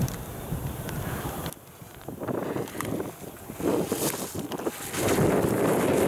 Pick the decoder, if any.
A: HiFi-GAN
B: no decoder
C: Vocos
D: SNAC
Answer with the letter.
B